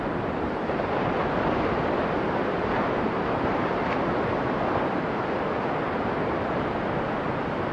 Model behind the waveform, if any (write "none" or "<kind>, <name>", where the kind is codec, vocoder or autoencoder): none